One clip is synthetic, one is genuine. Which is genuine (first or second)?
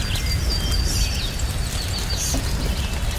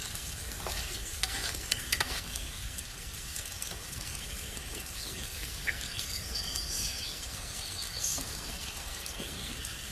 first